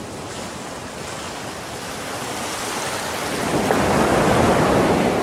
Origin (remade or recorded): recorded